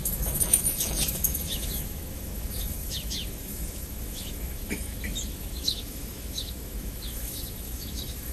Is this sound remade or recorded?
remade